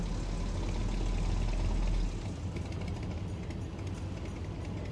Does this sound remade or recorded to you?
recorded